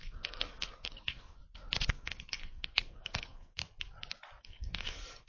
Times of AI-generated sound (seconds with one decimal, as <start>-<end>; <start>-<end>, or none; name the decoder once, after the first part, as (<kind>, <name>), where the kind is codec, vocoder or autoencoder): 0.0-1.4 (codec, SNAC); 1.9-3.6; 4.4-5.3